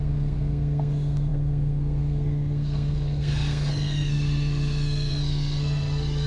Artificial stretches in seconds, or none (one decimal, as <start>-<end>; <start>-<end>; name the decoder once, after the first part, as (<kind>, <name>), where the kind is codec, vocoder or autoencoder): 0.0-6.3 (codec, SNAC)

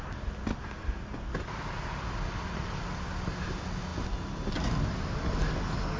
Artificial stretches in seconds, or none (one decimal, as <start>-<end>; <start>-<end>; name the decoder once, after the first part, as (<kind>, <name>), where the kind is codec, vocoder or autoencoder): none

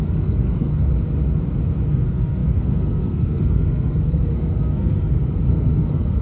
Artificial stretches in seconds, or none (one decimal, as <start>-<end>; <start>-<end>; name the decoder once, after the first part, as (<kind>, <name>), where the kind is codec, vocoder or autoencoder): 0.0-0.7 (codec, SNAC); 1.9-6.2